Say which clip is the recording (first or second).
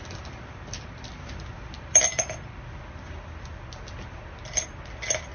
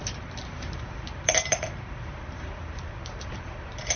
first